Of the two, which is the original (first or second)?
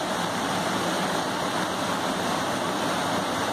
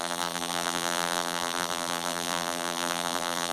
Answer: first